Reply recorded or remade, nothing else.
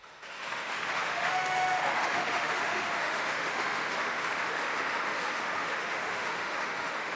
remade